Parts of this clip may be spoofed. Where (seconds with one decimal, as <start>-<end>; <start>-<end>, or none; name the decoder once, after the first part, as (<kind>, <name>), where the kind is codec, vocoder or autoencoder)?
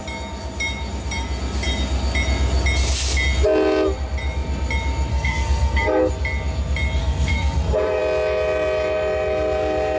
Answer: 5.1-6.1 (codec, SNAC); 7.0-8.0